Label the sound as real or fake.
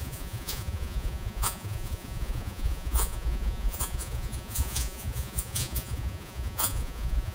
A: fake